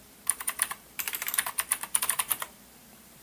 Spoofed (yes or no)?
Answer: yes